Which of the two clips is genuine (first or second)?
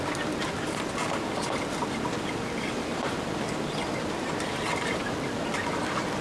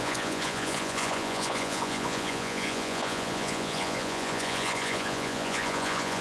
first